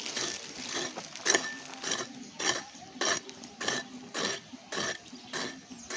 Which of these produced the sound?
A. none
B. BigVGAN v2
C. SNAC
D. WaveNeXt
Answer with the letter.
A